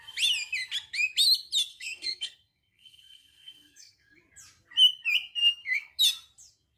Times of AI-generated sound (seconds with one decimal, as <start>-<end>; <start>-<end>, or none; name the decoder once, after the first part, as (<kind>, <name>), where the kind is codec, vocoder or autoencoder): 1.7-4.2 (codec, SNAC); 5.4-6.0